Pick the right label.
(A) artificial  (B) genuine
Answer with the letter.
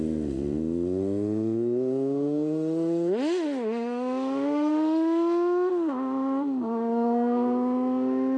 A